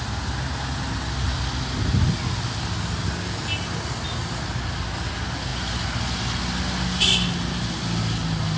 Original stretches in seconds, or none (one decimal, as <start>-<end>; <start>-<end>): 0.0-8.6

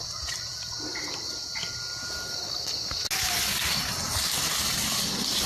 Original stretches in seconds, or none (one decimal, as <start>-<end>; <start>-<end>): 0.0-5.5

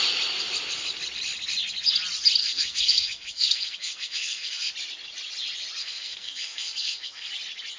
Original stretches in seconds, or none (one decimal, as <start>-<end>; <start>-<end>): 0.0-2.4; 4.7-5.8; 7.3-7.8

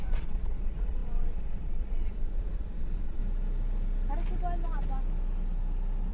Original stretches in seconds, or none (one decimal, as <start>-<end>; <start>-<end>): 3.2-6.1

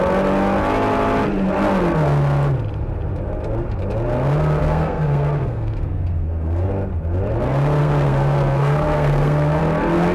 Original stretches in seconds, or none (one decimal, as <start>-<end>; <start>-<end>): 0.0-4.6; 6.7-7.8; 9.6-10.1

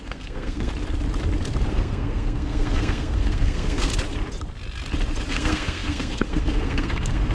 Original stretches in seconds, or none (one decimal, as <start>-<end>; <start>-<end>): 0.7-1.7; 3.9-5.3

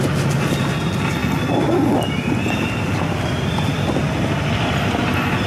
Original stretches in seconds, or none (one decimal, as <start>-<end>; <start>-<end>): 0.0-5.5

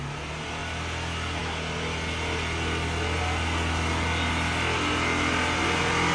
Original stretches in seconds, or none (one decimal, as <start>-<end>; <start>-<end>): 0.0-6.1